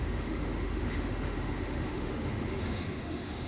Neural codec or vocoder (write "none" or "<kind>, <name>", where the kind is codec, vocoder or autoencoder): autoencoder, DAC-VAE